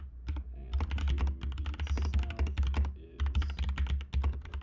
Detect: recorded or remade recorded